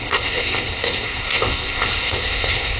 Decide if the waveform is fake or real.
fake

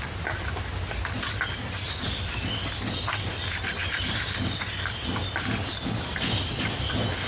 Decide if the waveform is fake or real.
real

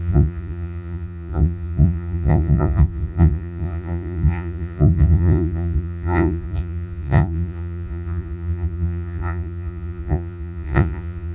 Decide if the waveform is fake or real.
fake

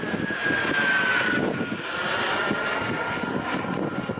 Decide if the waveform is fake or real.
real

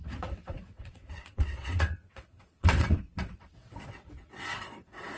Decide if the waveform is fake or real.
fake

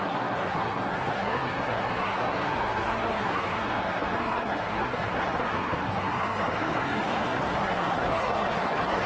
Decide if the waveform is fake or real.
fake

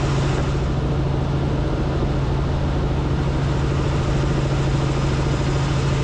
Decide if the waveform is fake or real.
real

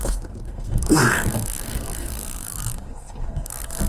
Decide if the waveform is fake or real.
fake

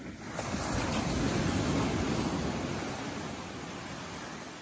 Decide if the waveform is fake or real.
real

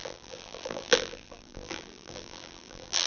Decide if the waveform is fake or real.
fake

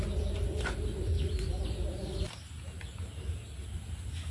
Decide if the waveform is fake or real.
real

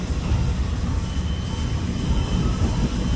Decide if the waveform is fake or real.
real